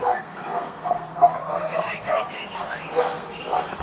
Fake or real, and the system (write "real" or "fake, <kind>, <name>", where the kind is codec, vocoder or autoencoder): fake, codec, SNAC